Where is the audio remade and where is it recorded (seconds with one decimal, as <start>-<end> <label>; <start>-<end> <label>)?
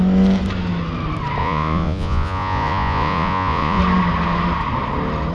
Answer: 0.0-1.4 recorded; 1.4-3.8 remade; 3.8-5.3 recorded